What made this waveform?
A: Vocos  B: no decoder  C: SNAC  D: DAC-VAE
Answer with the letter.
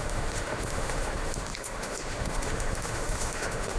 D